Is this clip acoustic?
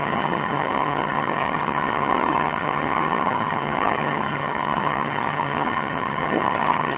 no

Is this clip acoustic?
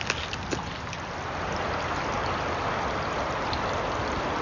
yes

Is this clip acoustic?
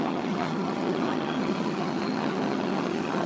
no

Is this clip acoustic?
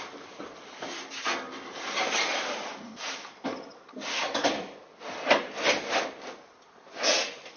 yes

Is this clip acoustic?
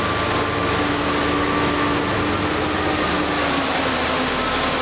yes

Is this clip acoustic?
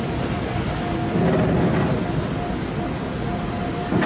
yes